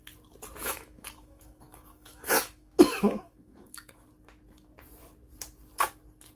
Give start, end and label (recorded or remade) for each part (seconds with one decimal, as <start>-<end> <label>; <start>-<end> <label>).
0.0-0.6 recorded; 0.6-4.1 remade; 4.1-6.4 recorded